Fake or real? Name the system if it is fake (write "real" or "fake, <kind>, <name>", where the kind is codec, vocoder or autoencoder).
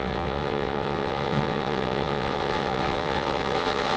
fake, vocoder, WaveNeXt